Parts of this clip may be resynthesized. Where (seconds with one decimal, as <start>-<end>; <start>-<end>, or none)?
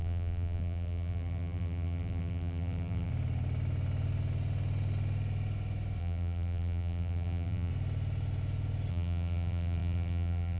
0.0-3.1; 6.0-7.7; 8.9-10.6